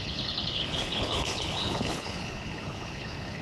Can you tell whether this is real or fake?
fake